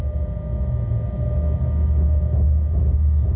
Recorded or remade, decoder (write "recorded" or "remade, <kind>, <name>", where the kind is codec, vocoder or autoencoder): recorded